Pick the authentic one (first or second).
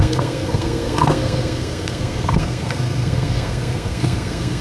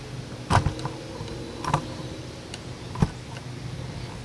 second